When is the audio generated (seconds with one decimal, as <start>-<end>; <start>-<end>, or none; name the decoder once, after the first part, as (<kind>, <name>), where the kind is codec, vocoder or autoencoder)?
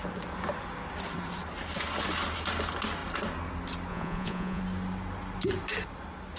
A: 3.9-4.6 (vocoder, Vocos)